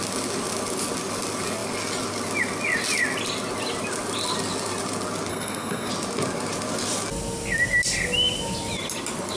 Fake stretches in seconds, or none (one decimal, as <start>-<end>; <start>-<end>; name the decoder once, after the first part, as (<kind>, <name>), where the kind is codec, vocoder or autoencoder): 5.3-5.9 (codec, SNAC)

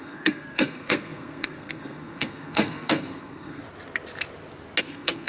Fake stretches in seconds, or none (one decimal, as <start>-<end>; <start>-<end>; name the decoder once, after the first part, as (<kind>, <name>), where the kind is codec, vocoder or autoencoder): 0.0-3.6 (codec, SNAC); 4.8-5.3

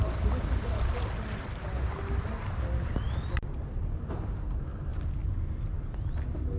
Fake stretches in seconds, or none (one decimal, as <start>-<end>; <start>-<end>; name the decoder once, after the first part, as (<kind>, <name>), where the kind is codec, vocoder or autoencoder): none

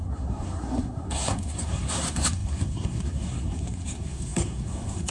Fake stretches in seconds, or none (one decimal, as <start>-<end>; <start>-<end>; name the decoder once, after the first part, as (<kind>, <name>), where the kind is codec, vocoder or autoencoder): 0.0-5.1 (codec, SNAC)